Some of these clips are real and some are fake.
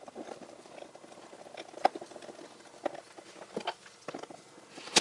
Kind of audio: real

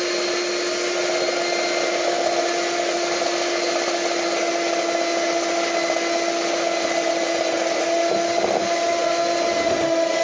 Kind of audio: real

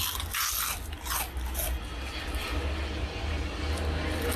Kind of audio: real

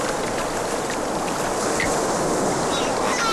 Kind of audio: real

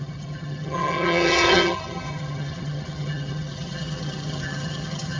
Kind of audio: fake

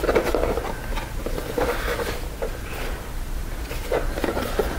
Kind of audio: real